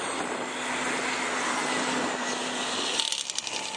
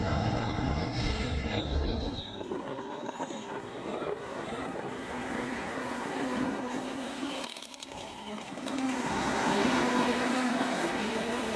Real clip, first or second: first